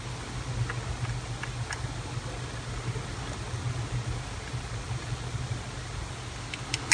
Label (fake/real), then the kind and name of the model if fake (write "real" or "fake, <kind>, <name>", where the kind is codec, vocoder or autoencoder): real